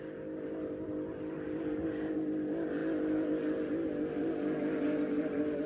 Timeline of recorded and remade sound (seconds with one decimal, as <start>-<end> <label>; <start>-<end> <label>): 0.0-5.7 recorded